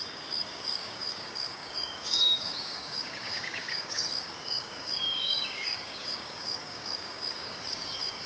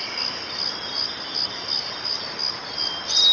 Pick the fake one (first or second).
first